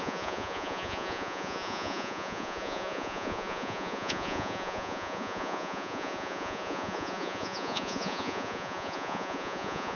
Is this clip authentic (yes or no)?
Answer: no